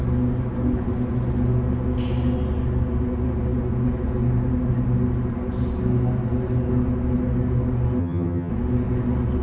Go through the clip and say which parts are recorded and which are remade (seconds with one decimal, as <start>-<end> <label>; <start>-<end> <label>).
0.0-8.0 recorded; 8.0-8.5 remade; 8.5-9.4 recorded